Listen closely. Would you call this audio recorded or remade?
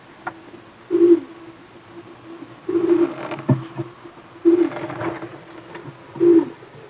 recorded